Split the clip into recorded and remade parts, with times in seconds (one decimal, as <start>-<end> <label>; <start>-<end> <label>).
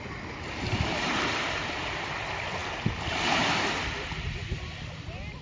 0.0-5.4 recorded